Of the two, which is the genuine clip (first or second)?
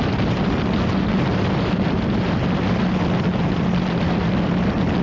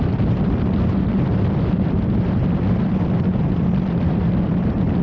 first